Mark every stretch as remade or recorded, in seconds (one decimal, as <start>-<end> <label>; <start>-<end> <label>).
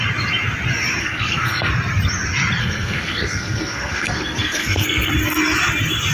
0.0-1.0 recorded; 1.0-1.7 remade; 1.7-2.6 recorded; 2.6-5.1 remade; 5.1-6.1 recorded